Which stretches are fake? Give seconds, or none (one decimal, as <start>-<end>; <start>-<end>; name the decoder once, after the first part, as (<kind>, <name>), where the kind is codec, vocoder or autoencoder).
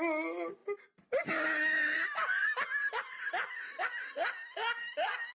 none